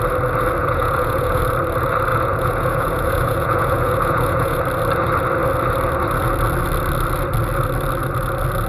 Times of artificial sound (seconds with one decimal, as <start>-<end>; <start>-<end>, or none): 0.6-1.4; 2.1-4.6